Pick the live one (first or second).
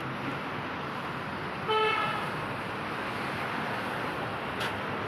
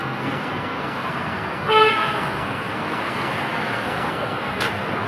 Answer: first